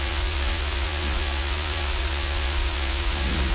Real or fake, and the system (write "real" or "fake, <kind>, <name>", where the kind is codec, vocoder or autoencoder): fake, vocoder, Vocos